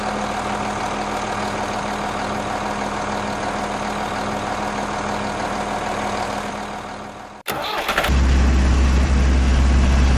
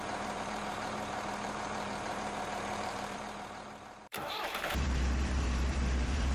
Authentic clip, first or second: first